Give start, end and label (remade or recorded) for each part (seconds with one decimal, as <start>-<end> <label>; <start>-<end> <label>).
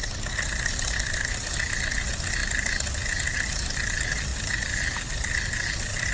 0.0-6.1 recorded